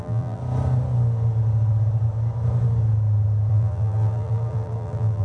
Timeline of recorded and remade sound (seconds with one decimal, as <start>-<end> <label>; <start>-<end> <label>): 0.0-0.4 remade; 0.4-3.5 recorded; 3.5-5.2 remade